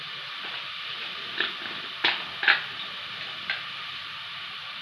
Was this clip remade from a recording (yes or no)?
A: no